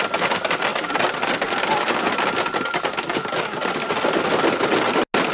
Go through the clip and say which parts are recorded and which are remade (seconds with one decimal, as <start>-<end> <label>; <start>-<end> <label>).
0.0-5.3 recorded

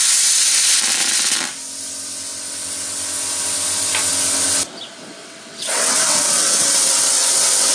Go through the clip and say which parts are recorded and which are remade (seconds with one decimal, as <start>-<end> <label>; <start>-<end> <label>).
0.0-5.2 recorded; 5.2-7.7 remade

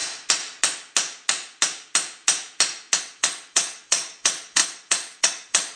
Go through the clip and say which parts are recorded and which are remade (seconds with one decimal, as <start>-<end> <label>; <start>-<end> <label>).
0.0-3.0 recorded; 3.0-5.8 remade

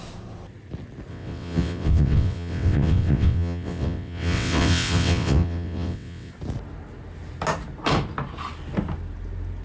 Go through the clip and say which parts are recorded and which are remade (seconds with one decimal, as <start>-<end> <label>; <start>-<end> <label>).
0.0-1.1 recorded; 1.1-6.3 remade; 6.3-9.6 recorded